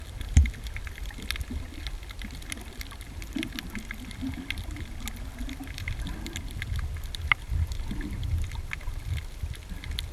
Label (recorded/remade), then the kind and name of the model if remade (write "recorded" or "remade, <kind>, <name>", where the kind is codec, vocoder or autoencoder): recorded